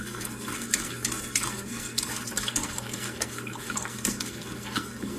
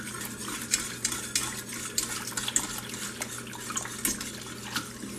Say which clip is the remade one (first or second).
first